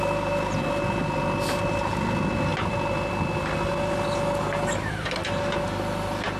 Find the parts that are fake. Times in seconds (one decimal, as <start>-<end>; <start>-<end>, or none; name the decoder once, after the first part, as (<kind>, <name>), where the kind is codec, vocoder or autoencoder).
none